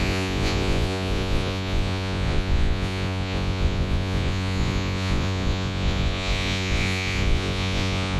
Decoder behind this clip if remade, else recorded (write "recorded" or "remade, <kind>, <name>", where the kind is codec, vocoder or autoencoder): remade, vocoder, Vocos